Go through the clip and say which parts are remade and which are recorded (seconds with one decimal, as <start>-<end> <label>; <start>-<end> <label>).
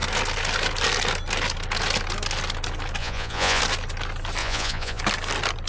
0.0-3.0 recorded; 3.0-3.6 remade; 3.6-4.4 recorded; 4.4-5.0 remade; 5.0-5.7 recorded